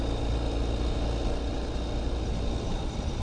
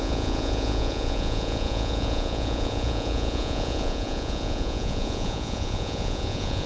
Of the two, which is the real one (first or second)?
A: first